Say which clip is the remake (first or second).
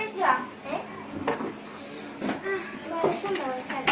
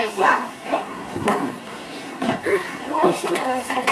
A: second